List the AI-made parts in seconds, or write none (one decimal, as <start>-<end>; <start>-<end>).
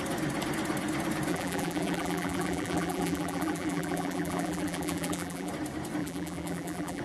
1.3-5.5; 6.0-7.0